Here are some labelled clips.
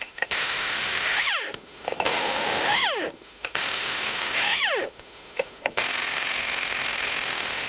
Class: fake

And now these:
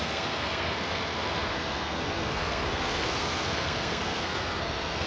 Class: fake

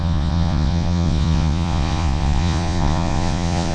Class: fake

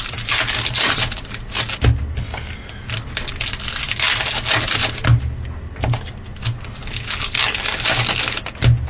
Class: real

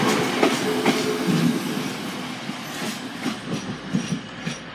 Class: real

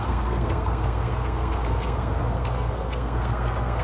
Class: fake